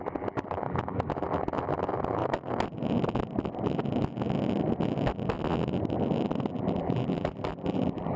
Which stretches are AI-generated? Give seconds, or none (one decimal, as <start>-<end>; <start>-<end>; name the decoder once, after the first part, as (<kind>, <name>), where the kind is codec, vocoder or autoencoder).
0.0-2.2 (vocoder, BigVGAN v2); 6.5-8.2